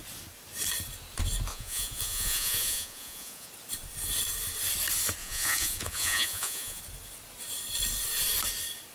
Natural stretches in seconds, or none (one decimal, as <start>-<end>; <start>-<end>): 0.0-1.5; 3.5-5.2; 6.8-8.9